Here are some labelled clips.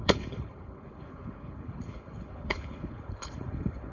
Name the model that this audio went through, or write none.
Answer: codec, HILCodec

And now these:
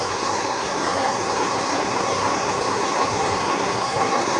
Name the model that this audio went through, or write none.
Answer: codec, SNAC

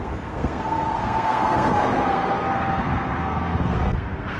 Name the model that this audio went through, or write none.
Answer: codec, SNAC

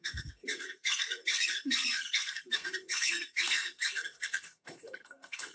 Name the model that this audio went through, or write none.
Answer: codec, SNAC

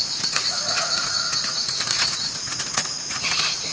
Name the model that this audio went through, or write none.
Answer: vocoder, Vocos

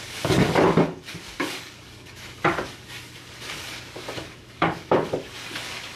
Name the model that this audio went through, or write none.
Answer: codec, DAC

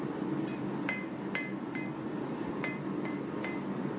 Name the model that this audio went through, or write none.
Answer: none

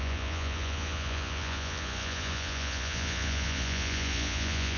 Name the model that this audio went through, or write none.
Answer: vocoder, Vocos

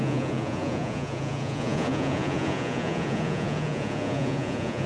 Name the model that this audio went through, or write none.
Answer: vocoder, Vocos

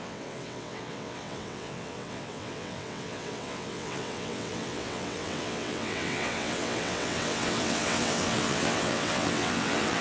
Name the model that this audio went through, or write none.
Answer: vocoder, WaveNeXt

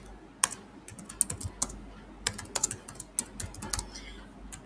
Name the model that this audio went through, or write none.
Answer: none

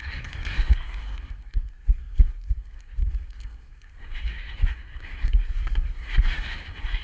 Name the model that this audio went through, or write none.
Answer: codec, SNAC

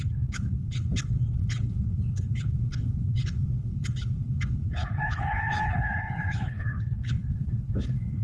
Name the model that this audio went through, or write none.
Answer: codec, HILCodec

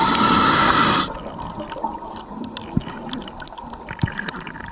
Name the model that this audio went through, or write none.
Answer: none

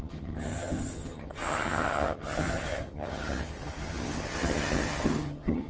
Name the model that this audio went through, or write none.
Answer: vocoder, HiFi-GAN